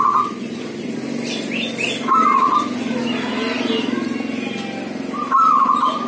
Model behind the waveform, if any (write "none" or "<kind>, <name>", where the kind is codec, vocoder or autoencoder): none